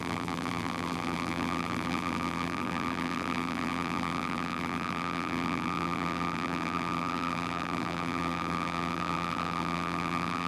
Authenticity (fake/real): fake